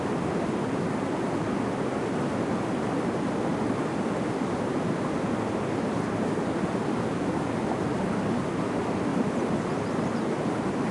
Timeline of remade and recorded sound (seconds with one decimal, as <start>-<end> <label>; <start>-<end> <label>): 0.0-10.9 recorded